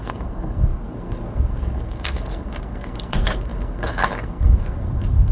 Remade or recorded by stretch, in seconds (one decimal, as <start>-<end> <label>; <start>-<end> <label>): 0.0-5.3 remade